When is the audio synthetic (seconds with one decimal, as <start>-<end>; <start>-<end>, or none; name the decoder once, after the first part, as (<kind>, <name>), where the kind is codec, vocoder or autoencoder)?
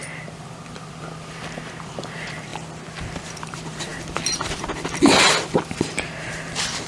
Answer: 0.0-2.5 (vocoder, BigVGAN v2); 3.2-6.9